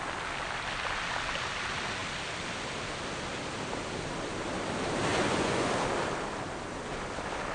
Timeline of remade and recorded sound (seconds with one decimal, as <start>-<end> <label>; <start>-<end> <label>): 0.0-5.1 recorded; 5.1-5.7 remade; 5.7-7.5 recorded